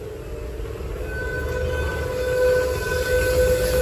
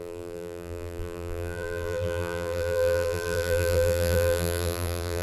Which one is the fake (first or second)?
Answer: second